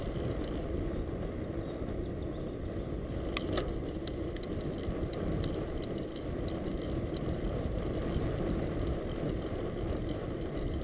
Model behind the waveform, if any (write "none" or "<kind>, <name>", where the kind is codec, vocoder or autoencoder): none